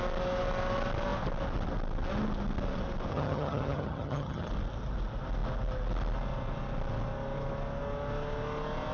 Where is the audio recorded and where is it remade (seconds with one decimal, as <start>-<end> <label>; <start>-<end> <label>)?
0.0-3.1 recorded; 3.1-4.5 remade; 4.5-8.9 recorded